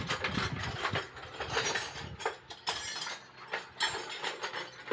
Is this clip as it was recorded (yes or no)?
yes